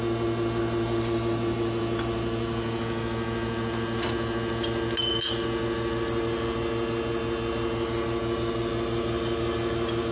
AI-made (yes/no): no